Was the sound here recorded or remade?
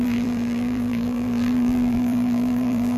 remade